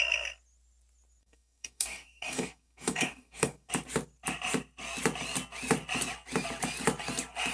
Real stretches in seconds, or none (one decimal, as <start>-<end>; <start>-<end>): 0.0-1.2; 3.7-7.5